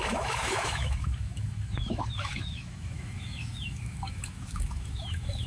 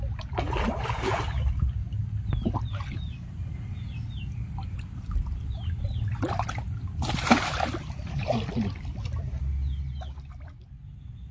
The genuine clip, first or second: second